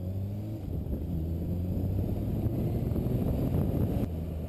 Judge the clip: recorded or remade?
recorded